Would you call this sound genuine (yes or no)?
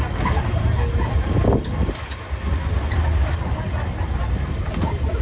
yes